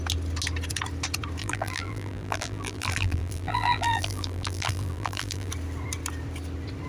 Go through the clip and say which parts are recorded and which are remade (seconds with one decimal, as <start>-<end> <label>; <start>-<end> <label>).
0.0-1.4 recorded; 1.4-5.5 remade; 5.5-6.9 recorded